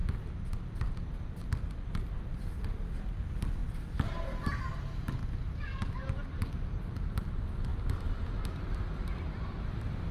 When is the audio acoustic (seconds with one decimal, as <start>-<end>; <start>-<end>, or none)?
0.0-10.1